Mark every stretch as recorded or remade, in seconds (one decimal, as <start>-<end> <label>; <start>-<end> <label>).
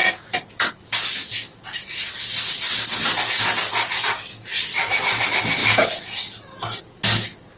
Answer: 0.0-7.6 recorded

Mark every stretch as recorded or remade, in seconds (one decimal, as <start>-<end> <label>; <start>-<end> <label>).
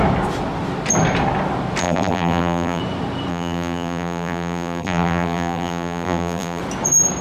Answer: 0.0-1.8 recorded; 1.8-2.8 remade; 2.8-3.3 recorded; 3.3-6.6 remade; 6.6-7.2 recorded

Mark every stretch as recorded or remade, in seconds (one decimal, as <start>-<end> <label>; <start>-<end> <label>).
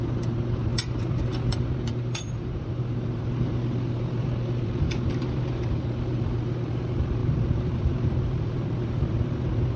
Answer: 0.0-9.8 remade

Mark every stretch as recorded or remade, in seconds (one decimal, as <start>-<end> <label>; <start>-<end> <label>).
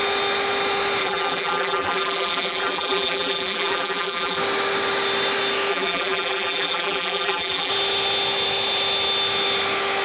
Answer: 0.0-1.0 recorded; 1.0-4.4 remade; 4.4-5.7 recorded; 5.7-7.7 remade; 7.7-10.0 recorded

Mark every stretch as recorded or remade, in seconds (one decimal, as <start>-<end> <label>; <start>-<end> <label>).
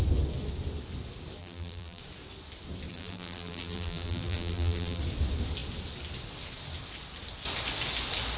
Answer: 0.0-1.4 recorded; 1.4-2.0 remade; 2.0-2.9 recorded; 2.9-5.0 remade; 5.0-8.4 recorded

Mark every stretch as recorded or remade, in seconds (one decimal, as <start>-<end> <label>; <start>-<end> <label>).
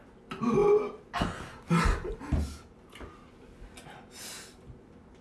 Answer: 0.0-5.2 recorded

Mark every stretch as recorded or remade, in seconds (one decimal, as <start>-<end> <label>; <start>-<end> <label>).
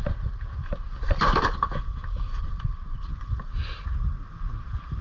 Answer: 0.0-0.6 recorded; 0.6-3.6 remade; 3.6-5.0 recorded